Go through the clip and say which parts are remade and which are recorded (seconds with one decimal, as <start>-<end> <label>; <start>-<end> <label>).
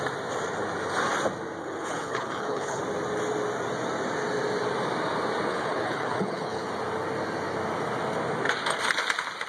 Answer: 0.0-1.6 recorded; 1.6-2.8 remade; 2.8-5.5 recorded; 5.5-6.7 remade; 6.7-9.5 recorded